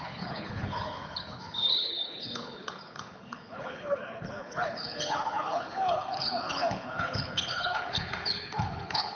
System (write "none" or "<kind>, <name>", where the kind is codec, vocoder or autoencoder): codec, HILCodec